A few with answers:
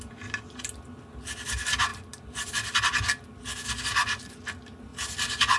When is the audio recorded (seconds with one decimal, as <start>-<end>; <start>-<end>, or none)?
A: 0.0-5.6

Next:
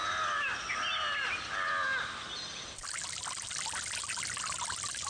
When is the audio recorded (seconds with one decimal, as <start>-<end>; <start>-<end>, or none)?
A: 0.0-5.1

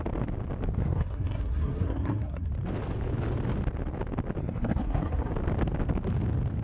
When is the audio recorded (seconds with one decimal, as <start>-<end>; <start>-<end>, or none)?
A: 0.0-0.8; 2.5-4.4; 5.3-6.6

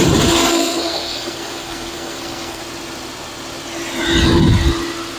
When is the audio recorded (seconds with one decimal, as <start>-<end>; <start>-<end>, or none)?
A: 0.0-0.4; 2.6-5.2

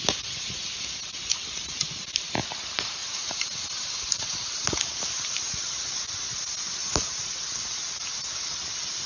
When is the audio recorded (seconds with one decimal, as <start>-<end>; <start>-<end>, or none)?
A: 0.0-3.0; 5.9-6.8; 7.3-9.1